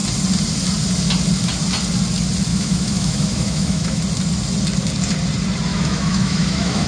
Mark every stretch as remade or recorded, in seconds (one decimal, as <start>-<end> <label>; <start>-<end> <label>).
0.0-2.5 recorded; 2.5-4.0 remade; 4.0-5.7 recorded; 5.7-6.9 remade